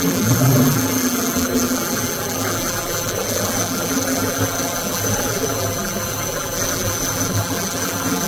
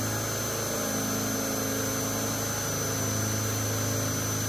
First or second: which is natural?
second